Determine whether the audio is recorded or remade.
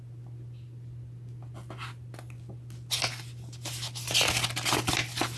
recorded